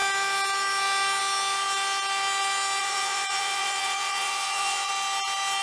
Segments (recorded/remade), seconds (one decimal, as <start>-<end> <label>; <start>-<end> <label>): 0.0-2.8 recorded; 2.8-4.9 remade; 4.9-5.6 recorded